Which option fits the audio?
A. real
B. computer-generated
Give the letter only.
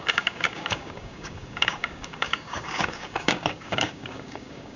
B